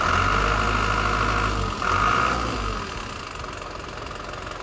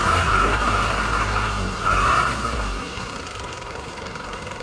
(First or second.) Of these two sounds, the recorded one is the first